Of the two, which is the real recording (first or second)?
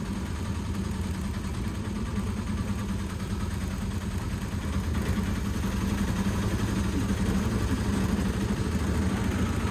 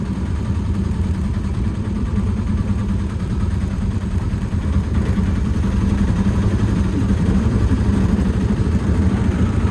first